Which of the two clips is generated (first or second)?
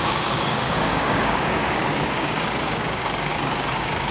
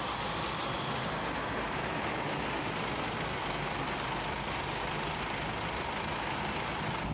first